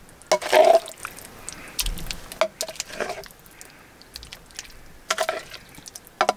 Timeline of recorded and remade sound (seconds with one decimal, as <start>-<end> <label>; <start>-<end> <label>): 0.0-6.4 recorded